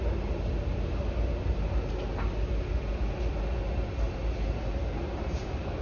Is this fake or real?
real